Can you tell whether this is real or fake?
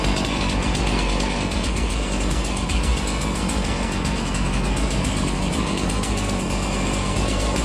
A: fake